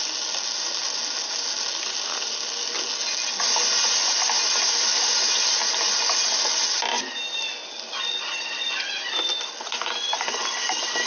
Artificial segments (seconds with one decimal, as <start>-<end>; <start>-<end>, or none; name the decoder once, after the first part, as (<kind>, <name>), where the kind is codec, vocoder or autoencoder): none